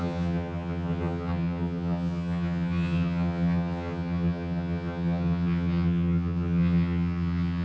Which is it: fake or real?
fake